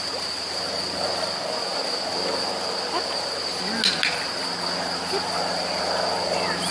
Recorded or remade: recorded